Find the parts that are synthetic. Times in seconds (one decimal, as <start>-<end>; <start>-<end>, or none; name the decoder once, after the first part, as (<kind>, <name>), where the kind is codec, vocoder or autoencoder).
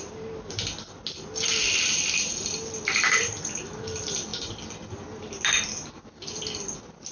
none